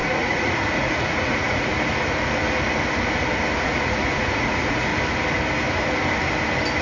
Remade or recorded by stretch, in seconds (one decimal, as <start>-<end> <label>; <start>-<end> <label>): 0.0-1.7 remade; 1.7-3.6 recorded; 3.6-4.9 remade; 4.9-6.8 recorded